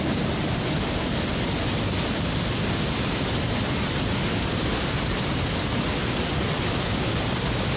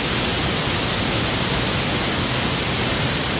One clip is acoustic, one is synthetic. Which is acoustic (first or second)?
second